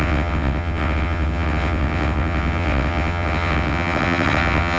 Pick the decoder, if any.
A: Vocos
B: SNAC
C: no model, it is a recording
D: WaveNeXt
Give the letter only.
D